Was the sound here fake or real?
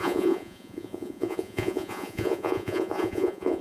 fake